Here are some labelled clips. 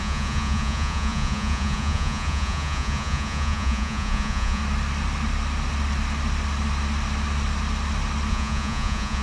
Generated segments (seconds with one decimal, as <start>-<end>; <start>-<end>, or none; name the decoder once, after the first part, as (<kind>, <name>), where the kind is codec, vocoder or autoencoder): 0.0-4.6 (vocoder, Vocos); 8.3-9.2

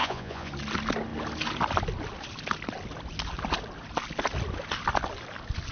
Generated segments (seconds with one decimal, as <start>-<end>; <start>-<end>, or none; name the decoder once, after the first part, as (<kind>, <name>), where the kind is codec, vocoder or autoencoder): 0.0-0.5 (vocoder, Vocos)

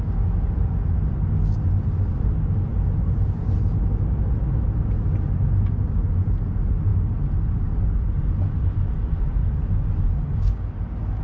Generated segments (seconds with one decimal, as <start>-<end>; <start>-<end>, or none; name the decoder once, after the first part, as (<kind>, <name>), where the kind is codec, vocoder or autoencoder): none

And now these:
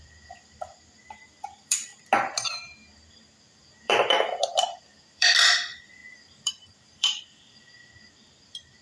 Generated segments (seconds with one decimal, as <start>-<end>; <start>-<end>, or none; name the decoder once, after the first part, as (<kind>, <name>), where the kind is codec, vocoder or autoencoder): 0.0-1.9 (vocoder, BigVGAN v2); 3.1-8.8

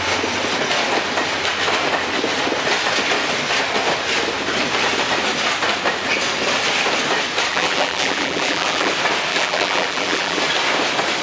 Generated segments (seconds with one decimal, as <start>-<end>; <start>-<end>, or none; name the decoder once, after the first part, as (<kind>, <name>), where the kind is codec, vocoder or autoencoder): 7.5-8.9 (vocoder, BigVGAN v2); 9.3-10.4

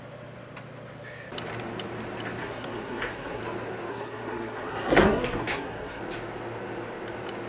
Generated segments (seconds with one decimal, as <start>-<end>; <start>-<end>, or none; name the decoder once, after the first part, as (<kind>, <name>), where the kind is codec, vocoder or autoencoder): 2.4-3.4 (codec, SNAC); 3.9-6.0